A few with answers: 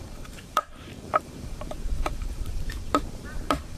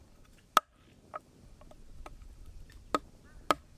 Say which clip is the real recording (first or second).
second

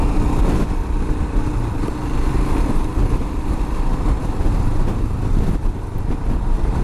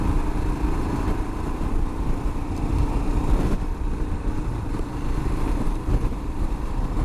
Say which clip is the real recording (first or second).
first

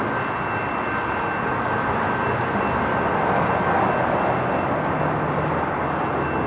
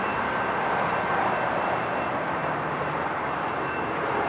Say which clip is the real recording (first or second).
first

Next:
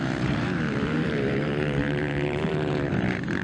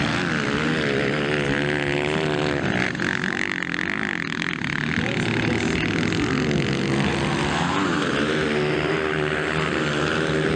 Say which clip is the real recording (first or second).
second